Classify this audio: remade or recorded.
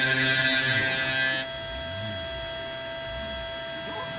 recorded